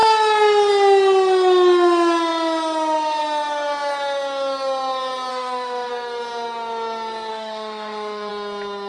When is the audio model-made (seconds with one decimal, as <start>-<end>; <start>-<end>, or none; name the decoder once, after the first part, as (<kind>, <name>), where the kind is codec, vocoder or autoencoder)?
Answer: 5.3-5.9 (autoencoder, DAC-VAE); 7.3-8.3